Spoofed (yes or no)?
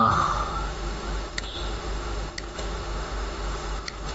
yes